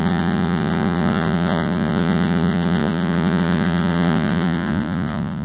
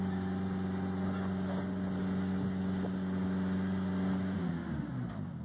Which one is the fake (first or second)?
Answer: first